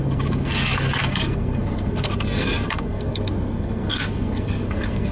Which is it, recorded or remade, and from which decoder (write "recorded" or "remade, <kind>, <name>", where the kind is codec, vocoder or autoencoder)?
remade, codec, SNAC